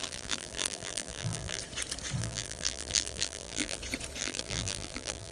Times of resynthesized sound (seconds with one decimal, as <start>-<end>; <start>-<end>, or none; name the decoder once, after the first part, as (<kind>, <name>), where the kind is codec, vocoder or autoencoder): 0.0-1.6 (vocoder, BigVGAN v2); 2.2-3.8; 4.2-5.3